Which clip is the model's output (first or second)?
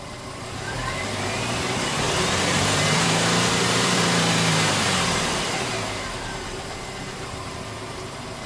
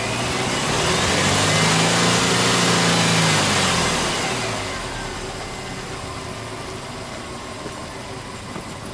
first